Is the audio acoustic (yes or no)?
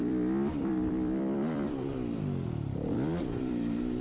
no